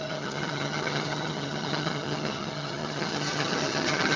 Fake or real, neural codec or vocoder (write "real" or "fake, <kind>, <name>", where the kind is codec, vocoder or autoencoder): fake, vocoder, HiFi-GAN